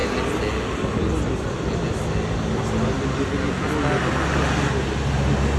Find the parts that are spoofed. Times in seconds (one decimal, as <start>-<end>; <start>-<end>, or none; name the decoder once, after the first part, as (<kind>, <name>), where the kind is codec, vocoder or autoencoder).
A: none